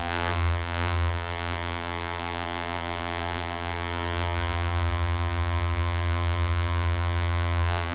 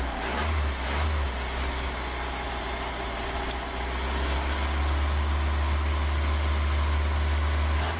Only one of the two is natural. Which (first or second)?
second